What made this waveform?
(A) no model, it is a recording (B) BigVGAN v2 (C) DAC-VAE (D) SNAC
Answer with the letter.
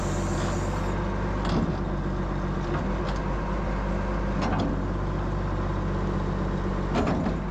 A